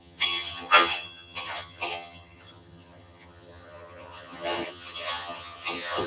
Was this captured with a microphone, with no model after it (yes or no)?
no